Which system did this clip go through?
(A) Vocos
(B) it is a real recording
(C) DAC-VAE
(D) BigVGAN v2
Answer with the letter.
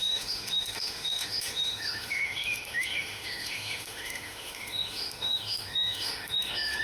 C